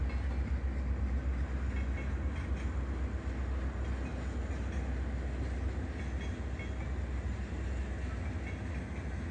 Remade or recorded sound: recorded